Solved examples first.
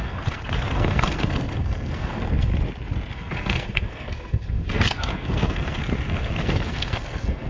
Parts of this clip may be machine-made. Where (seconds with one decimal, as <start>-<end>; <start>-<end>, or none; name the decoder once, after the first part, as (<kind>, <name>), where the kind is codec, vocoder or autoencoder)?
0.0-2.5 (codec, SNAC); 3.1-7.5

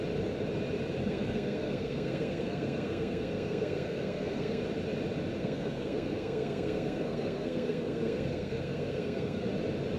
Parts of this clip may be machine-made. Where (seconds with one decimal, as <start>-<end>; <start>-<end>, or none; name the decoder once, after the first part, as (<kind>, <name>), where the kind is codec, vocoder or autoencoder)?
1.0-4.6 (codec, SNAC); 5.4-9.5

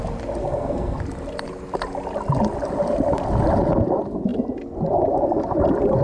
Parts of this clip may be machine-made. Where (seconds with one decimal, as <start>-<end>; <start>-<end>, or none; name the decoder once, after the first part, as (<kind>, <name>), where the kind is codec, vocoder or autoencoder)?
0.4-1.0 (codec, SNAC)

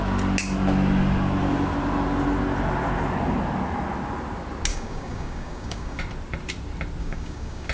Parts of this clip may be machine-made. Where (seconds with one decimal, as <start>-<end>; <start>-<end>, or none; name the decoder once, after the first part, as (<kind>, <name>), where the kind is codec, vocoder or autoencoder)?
4.7-6.0 (codec, DAC); 7.0-7.7